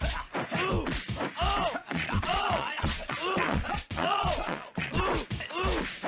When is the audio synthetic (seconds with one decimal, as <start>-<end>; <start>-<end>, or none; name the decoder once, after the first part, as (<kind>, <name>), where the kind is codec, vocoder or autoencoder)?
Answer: 1.8-5.0 (vocoder, Vocos)